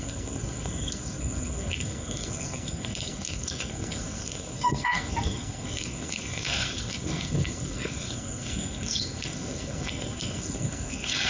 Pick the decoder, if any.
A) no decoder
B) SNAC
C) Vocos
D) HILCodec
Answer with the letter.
B